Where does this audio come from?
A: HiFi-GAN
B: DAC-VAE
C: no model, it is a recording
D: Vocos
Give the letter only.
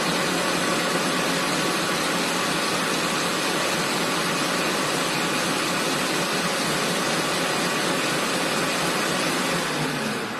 C